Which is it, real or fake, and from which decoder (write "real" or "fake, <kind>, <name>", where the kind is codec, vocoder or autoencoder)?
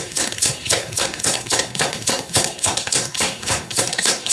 fake, codec, SNAC